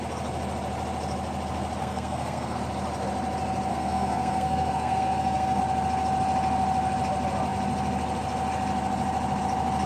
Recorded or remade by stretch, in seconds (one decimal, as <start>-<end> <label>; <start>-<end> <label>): 0.0-1.8 recorded; 1.8-2.6 remade; 2.6-3.7 recorded; 3.7-5.6 remade; 5.6-9.9 recorded